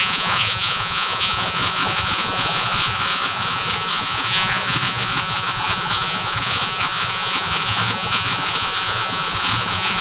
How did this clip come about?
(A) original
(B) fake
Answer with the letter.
B